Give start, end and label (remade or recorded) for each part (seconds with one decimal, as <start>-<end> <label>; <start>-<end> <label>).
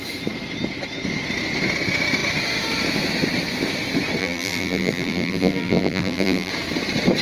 0.0-4.2 recorded; 4.2-6.5 remade; 6.5-7.2 recorded